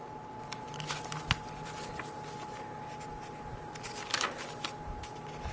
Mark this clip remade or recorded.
recorded